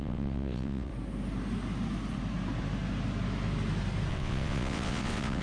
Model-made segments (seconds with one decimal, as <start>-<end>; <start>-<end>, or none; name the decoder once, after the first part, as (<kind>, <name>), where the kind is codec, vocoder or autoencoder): 0.0-0.9 (vocoder, WaveNeXt); 4.1-5.4